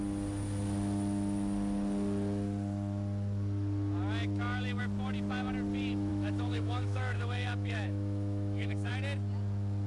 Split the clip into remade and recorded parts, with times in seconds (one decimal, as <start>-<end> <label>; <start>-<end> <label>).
0.0-6.1 recorded; 6.1-8.9 remade; 8.9-9.9 recorded

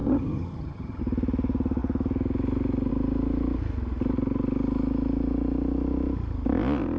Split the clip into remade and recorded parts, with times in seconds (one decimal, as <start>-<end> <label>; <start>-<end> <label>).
0.0-1.0 remade; 1.0-7.0 recorded

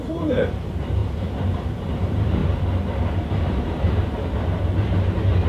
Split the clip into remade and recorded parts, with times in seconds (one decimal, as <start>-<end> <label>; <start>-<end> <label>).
0.0-2.4 remade; 2.4-3.4 recorded; 3.4-5.5 remade

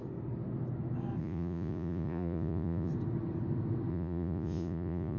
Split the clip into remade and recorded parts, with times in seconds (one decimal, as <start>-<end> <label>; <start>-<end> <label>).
0.0-1.2 recorded; 1.2-2.9 remade; 2.9-3.9 recorded; 3.9-5.2 remade

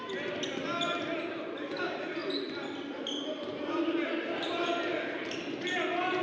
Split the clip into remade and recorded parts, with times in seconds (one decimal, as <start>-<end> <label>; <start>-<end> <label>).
0.0-6.2 recorded

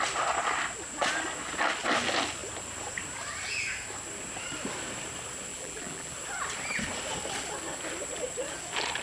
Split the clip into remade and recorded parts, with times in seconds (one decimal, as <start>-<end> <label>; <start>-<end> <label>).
0.0-5.5 recorded; 5.5-6.1 remade; 6.1-9.0 recorded